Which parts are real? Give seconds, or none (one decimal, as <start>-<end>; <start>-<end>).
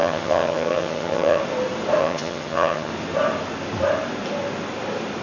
1.4-2.0; 2.9-5.2